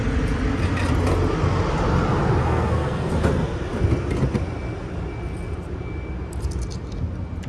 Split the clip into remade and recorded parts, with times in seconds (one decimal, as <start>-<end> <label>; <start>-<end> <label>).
0.0-2.4 recorded; 2.4-3.1 remade; 3.1-7.5 recorded

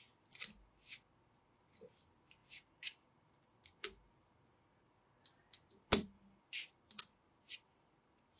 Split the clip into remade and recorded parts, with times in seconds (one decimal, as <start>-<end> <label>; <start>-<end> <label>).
0.0-8.4 recorded

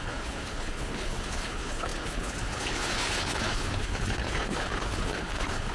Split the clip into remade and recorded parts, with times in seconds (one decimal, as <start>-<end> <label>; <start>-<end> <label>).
0.0-5.7 remade

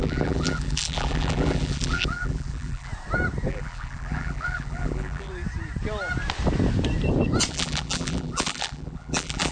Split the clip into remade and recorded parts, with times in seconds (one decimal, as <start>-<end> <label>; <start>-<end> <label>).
0.0-2.9 remade; 2.9-3.5 recorded; 3.5-5.3 remade; 5.3-7.5 recorded; 7.5-9.5 remade

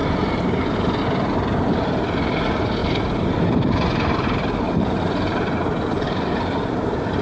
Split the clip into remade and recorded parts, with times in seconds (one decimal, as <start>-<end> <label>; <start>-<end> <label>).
0.0-1.0 remade; 1.0-2.8 recorded; 2.8-7.2 remade

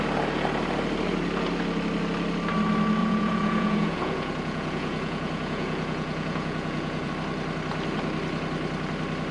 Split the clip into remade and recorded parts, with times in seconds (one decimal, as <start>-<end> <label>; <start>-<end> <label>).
0.0-3.0 recorded; 3.0-7.1 remade; 7.1-9.3 recorded